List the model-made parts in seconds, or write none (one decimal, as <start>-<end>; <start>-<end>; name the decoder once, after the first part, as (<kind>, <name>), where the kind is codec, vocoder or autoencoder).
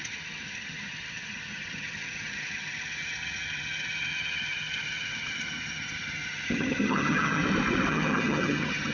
0.0-7.4 (vocoder, HiFi-GAN); 7.9-8.9